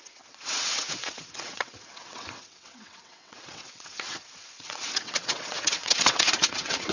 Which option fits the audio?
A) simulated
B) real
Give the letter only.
A